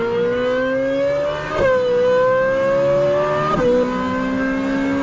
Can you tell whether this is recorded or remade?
recorded